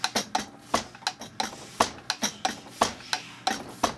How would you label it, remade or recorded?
recorded